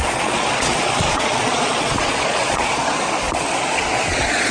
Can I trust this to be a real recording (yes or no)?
no